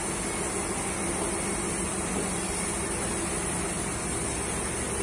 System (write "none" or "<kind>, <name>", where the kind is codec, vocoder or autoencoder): none